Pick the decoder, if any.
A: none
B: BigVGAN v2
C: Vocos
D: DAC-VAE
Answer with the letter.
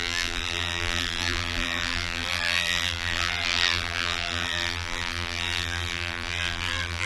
B